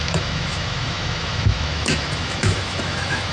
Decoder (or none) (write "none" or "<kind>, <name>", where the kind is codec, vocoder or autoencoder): autoencoder, DAC-VAE